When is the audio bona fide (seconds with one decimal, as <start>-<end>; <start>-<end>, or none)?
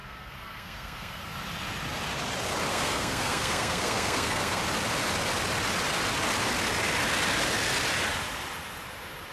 1.2-2.7; 4.6-9.3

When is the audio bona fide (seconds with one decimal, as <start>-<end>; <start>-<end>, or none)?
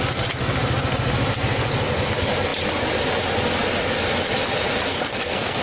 0.0-4.9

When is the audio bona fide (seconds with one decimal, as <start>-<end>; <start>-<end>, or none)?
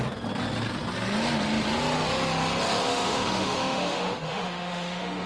0.0-2.8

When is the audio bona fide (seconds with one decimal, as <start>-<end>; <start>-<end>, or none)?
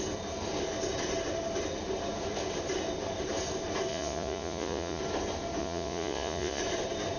0.0-3.9; 5.0-5.6; 6.6-7.2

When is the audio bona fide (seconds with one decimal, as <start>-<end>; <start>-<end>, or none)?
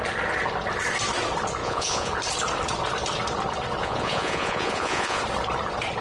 0.0-1.6; 2.1-3.8; 5.2-6.0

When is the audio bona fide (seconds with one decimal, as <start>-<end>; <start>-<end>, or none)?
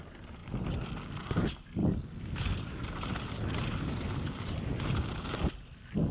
0.0-6.1